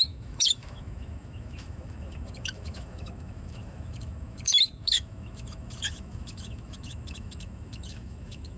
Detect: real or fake fake